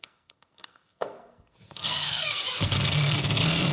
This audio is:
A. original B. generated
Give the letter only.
B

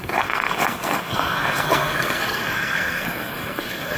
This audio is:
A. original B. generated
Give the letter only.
B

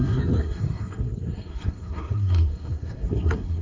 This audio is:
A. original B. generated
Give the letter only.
B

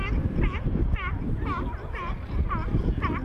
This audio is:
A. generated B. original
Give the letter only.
B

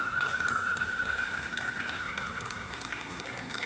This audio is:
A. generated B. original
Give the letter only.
A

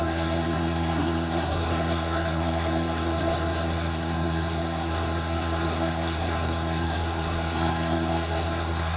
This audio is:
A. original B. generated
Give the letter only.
B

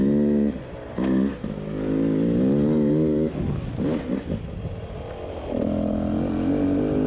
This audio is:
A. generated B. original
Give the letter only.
B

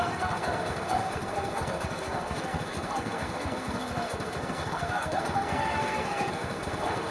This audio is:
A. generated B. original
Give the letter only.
A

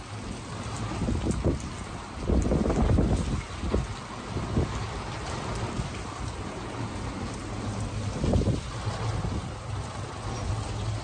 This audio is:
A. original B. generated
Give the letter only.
A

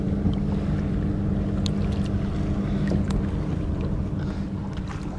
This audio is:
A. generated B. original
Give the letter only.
B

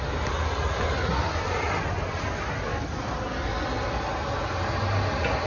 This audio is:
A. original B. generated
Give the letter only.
A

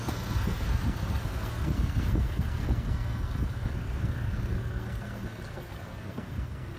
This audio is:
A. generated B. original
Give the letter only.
A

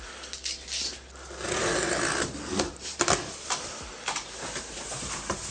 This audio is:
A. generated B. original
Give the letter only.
B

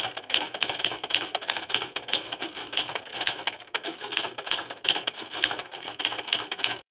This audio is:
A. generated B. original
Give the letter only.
A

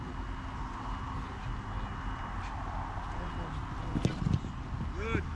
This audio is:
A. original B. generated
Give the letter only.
A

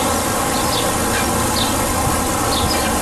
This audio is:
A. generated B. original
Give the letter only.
B